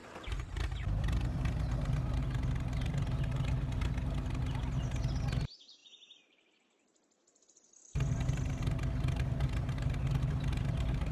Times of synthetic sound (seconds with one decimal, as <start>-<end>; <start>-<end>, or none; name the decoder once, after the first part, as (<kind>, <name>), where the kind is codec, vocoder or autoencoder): 0.0-1.5 (vocoder, BigVGAN v2)